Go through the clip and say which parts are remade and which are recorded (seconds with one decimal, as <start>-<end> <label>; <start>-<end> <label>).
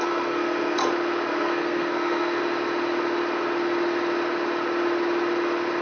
0.0-0.8 remade; 0.8-1.3 recorded; 1.3-2.4 remade; 2.4-5.8 recorded